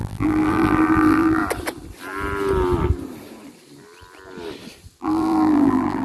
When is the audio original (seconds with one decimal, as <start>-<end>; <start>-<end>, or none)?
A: 1.4-5.0

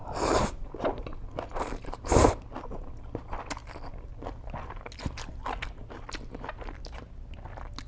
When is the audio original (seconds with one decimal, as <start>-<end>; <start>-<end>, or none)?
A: 2.3-7.9